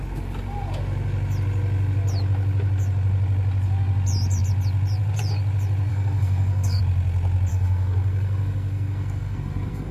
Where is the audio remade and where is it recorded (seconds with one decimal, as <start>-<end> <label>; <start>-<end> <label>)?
0.0-5.9 recorded; 5.9-6.8 remade; 6.8-7.5 recorded; 7.5-9.9 remade